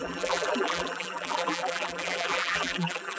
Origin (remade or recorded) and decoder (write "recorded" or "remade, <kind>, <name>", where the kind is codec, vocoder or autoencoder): remade, vocoder, BigVGAN v2